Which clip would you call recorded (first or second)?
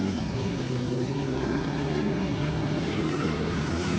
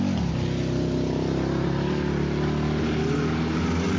second